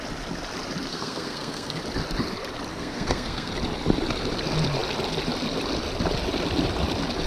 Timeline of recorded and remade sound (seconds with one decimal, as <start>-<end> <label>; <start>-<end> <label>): 0.0-0.9 recorded; 0.9-1.8 remade; 1.8-2.7 recorded; 2.7-3.5 remade; 3.5-7.3 recorded